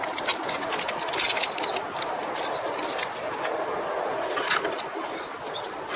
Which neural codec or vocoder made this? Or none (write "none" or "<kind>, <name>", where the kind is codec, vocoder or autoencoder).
none